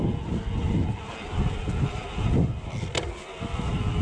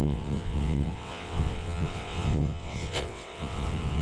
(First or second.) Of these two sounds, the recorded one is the first